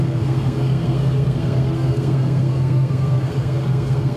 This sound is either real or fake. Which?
fake